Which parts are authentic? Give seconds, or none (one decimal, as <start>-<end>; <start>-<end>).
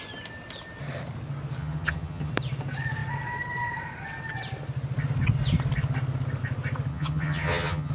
0.0-1.6; 2.3-6.9